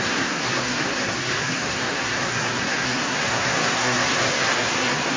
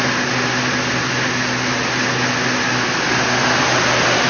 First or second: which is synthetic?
first